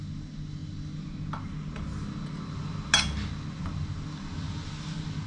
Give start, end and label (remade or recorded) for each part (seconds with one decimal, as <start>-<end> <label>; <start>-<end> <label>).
0.0-5.3 recorded